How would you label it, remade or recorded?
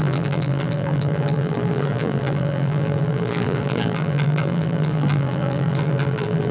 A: remade